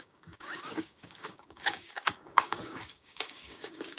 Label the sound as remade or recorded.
remade